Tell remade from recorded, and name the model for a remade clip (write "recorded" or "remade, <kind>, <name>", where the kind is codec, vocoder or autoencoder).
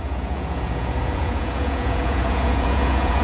remade, vocoder, Vocos